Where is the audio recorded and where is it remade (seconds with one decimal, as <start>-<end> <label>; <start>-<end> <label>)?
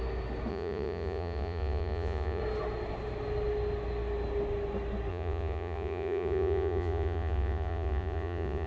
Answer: 0.0-0.5 recorded; 0.5-2.4 remade; 2.4-5.1 recorded; 5.1-8.7 remade